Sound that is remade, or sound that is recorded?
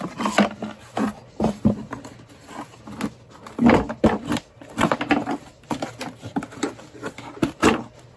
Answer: recorded